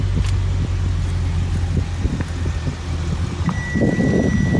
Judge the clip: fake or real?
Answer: real